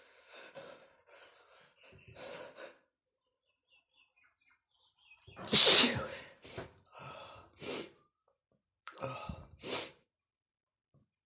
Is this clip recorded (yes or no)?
no